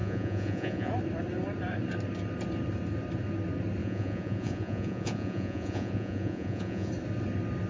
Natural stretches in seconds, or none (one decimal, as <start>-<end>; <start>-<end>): 0.9-3.8; 6.9-7.7